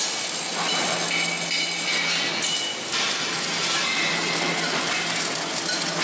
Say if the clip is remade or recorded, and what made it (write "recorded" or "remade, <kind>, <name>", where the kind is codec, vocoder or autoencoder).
recorded